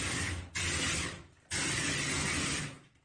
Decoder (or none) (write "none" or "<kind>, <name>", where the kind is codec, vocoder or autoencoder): none